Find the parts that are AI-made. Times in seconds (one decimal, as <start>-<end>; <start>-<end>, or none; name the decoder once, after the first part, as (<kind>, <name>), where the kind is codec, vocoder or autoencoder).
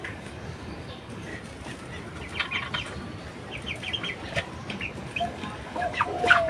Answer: 0.0-1.3 (codec, DAC); 4.7-6.5